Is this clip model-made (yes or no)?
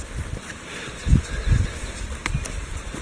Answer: no